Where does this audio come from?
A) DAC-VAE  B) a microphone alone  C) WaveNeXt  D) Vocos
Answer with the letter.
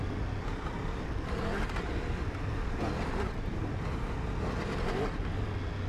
B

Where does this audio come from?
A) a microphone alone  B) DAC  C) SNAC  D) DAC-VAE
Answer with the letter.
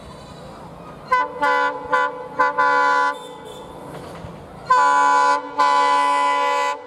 A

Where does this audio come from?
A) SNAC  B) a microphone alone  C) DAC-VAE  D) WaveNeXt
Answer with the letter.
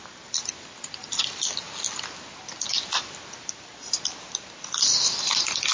B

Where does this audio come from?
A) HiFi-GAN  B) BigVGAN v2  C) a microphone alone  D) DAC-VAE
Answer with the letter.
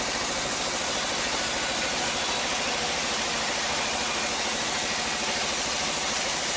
C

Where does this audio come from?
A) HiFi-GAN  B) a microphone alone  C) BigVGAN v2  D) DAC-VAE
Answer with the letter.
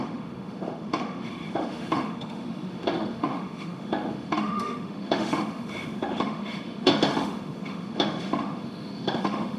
D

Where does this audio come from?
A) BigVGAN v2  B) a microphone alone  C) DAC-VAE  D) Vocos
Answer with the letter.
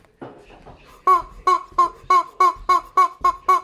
B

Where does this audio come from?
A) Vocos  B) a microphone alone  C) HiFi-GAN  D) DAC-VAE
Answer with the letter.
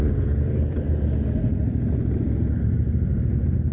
B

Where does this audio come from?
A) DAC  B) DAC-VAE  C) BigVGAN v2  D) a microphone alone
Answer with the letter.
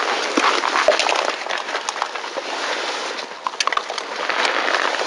D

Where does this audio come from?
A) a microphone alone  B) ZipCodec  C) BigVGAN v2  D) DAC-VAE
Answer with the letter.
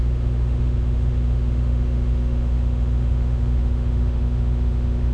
D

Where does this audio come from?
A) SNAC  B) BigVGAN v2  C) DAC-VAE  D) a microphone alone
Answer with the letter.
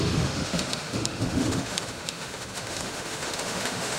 C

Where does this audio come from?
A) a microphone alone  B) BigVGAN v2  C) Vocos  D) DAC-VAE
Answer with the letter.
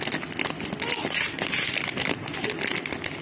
A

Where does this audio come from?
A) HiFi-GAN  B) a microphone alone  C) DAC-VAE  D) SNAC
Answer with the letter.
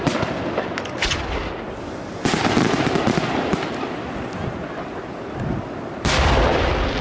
B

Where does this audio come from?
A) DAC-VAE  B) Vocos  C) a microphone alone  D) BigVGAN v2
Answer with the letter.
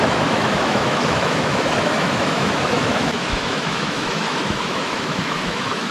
A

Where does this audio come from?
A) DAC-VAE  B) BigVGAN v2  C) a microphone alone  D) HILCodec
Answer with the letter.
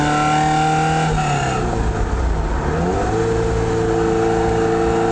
C